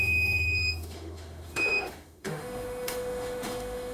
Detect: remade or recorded remade